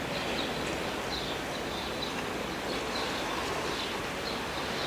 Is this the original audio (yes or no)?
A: yes